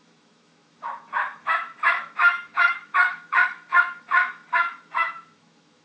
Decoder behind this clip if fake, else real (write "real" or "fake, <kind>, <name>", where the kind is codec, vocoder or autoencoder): fake, autoencoder, DAC-VAE